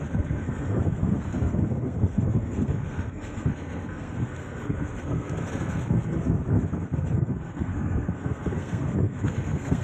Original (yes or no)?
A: no